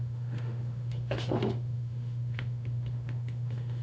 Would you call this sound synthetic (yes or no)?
yes